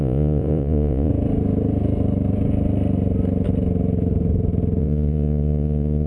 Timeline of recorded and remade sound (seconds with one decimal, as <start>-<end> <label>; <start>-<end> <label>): 0.0-1.1 remade; 1.1-4.8 recorded; 4.8-6.1 remade

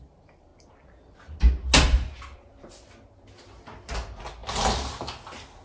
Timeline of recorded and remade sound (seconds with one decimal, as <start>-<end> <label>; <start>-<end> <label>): 0.0-5.6 recorded